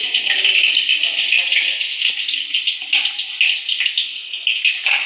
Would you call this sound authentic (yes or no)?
yes